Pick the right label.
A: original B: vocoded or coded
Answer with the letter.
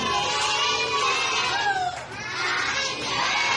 A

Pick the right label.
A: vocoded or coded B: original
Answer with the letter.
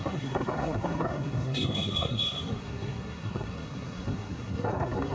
A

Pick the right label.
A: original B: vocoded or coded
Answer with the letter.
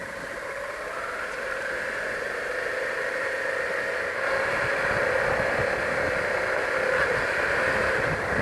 A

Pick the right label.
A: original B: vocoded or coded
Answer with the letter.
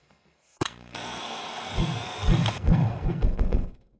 B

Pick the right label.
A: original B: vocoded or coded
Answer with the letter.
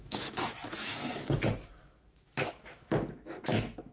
B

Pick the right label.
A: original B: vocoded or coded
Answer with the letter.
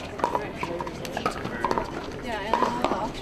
A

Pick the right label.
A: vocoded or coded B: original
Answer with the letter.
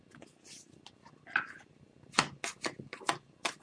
B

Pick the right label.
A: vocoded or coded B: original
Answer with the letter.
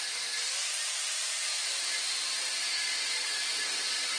A